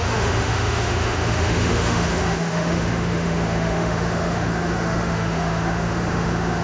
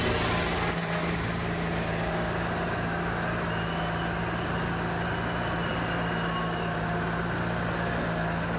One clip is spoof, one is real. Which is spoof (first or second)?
first